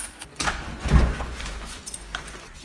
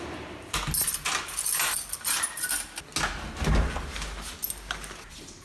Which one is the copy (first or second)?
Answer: first